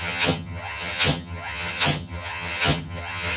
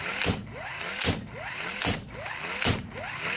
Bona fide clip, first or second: second